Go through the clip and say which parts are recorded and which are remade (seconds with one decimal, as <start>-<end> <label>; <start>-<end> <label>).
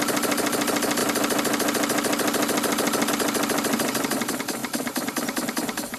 0.0-4.6 recorded; 4.6-6.0 remade